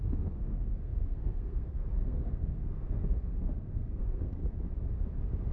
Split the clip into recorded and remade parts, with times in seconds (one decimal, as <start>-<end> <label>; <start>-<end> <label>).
0.0-4.4 remade; 4.4-5.5 recorded